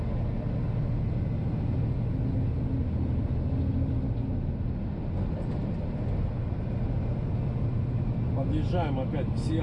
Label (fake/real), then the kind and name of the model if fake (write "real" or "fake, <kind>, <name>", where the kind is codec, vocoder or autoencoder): real